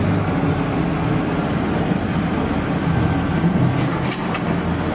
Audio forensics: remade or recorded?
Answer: recorded